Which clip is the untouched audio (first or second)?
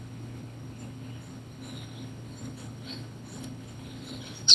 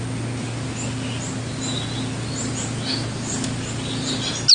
second